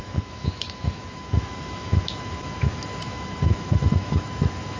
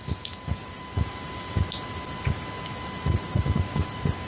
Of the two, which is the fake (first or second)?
first